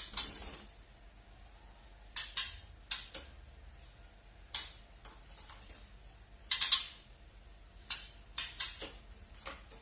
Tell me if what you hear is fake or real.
real